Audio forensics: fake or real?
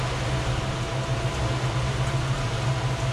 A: real